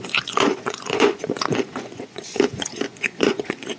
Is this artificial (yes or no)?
yes